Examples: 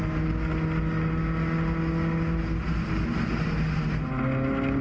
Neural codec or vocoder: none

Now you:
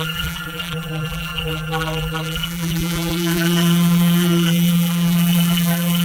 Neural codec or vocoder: vocoder, BigVGAN v2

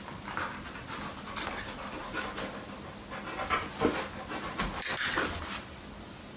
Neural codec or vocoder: none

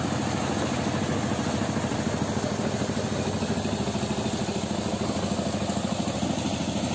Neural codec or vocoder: none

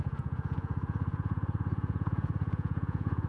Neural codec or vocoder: vocoder, Vocos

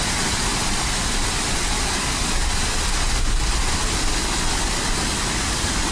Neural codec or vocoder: none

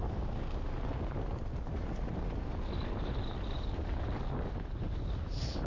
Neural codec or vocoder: none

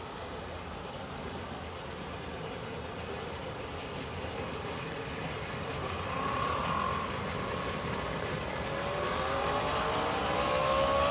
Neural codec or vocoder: none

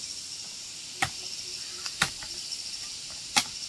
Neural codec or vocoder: none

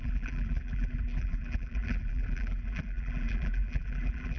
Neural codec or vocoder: vocoder, BigVGAN v2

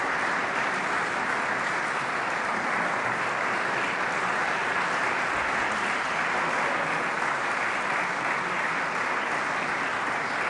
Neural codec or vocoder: none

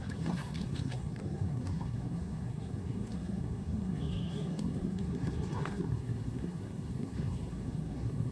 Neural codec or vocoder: codec, SNAC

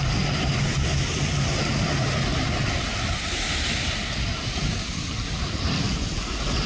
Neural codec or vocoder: none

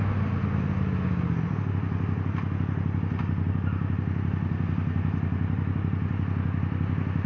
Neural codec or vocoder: none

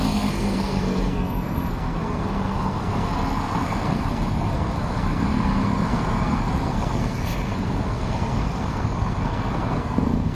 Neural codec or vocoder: codec, SNAC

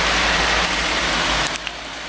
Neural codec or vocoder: none